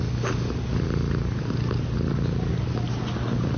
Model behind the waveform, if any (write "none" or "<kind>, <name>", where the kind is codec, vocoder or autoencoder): none